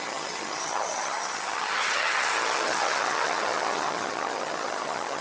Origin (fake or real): fake